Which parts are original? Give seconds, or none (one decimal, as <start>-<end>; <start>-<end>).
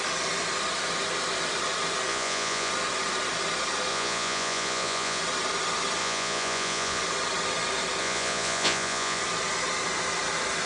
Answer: 0.0-2.1; 2.7-3.9; 5.2-6.0; 7.0-8.0; 9.2-10.7